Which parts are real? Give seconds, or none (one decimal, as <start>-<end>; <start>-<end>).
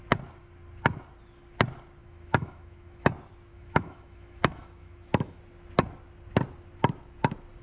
0.0-2.0; 3.1-3.5; 5.4-7.6